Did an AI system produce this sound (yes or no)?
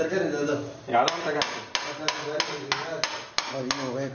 no